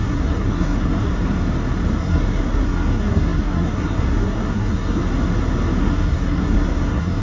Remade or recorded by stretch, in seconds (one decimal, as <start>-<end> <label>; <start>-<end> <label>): 0.0-1.1 remade; 1.1-1.9 recorded; 1.9-5.0 remade; 5.0-5.8 recorded; 5.8-7.2 remade